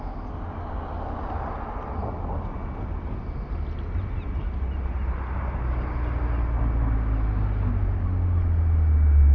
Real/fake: real